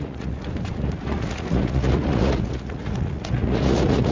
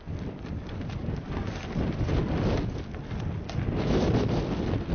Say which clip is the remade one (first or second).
first